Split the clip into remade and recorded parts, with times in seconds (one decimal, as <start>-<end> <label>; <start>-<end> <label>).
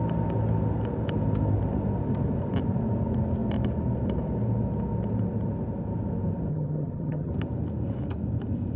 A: 0.0-6.5 recorded; 6.5-7.3 remade; 7.3-8.8 recorded